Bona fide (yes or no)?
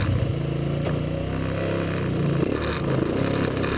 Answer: yes